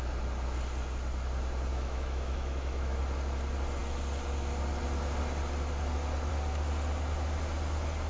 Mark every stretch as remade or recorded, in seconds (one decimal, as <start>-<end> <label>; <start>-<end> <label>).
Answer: 0.0-1.7 recorded; 1.7-3.0 remade; 3.0-8.1 recorded